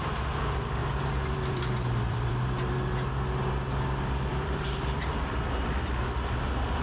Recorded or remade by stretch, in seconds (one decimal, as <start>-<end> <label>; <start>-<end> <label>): 0.0-0.8 recorded; 0.8-2.3 remade; 2.3-4.3 recorded; 4.3-5.0 remade; 5.0-6.8 recorded